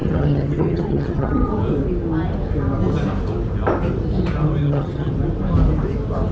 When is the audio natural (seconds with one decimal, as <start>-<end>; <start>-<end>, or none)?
1.5-4.6; 5.1-6.3